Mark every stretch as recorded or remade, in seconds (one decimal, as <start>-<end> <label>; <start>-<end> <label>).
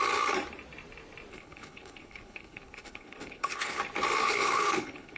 0.0-1.3 recorded; 1.3-3.8 remade; 3.8-4.2 recorded; 4.2-5.2 remade